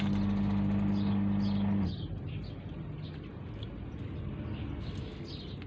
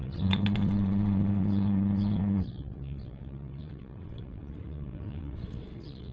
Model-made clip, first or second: second